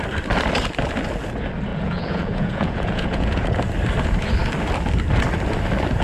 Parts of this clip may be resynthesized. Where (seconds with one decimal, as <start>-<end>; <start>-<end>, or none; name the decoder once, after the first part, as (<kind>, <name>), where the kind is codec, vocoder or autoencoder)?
1.7-3.6 (vocoder, Vocos)